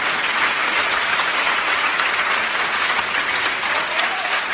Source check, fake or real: fake